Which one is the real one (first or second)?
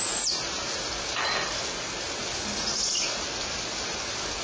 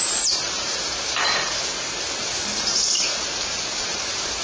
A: first